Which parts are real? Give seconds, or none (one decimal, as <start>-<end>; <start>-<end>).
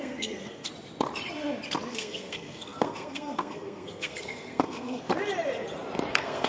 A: 0.7-1.9; 5.1-6.1